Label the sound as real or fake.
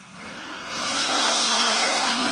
fake